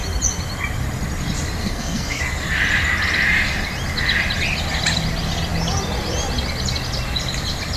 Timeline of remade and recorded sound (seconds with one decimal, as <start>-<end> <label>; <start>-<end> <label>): 0.0-1.6 recorded; 1.6-2.2 remade; 2.2-7.8 recorded